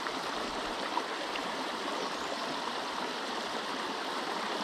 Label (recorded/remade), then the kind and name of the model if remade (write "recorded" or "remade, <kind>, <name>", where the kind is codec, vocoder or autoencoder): remade, vocoder, BigVGAN v2